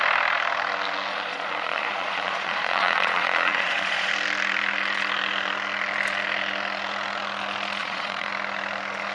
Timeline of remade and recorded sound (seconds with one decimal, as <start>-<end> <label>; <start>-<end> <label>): 0.0-1.1 recorded; 1.1-4.1 remade; 4.1-7.8 recorded; 7.8-8.3 remade; 8.3-9.1 recorded

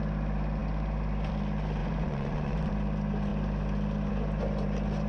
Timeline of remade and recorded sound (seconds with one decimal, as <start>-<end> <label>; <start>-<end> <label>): 0.0-1.8 recorded; 1.8-2.7 remade; 2.7-5.1 recorded

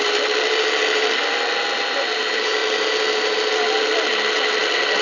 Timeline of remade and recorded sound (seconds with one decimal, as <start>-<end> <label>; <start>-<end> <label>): 0.0-0.8 recorded; 0.8-1.3 remade; 1.3-5.0 recorded

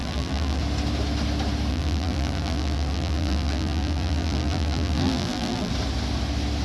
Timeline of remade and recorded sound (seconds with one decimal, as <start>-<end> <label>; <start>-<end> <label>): 0.0-0.6 remade; 0.6-1.7 recorded; 1.7-5.7 remade; 5.7-6.6 recorded

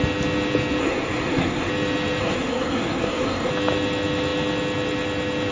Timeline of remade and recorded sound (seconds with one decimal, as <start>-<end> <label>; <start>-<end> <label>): 0.0-0.8 recorded; 0.8-1.7 remade; 1.7-2.2 recorded; 2.2-3.5 remade; 3.5-5.5 recorded

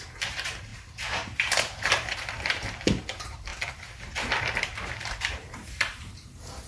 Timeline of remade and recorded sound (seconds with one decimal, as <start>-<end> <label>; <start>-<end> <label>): 0.0-3.5 remade; 3.5-4.4 recorded; 4.4-6.7 remade

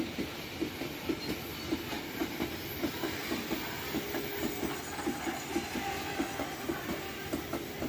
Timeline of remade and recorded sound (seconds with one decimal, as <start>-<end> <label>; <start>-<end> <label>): 0.0-7.9 recorded